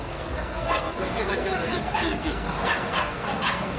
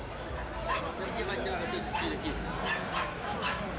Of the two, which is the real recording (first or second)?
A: second